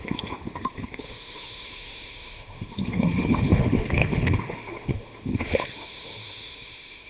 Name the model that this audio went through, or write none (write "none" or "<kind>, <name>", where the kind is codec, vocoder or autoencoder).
autoencoder, DAC-VAE